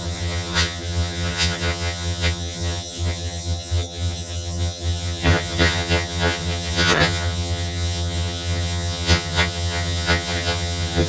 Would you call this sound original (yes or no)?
no